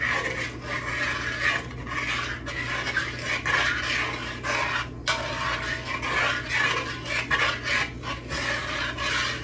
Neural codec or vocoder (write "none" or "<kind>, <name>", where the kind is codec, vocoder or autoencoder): none